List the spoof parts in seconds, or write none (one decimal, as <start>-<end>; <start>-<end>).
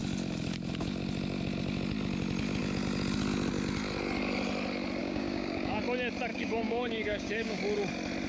5.0-5.8; 6.3-7.6